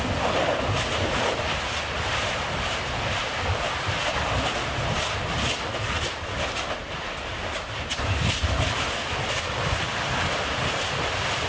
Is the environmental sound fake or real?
real